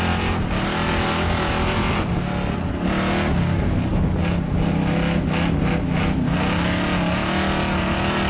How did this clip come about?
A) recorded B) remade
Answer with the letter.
A